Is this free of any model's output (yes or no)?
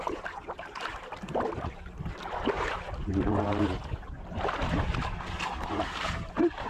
yes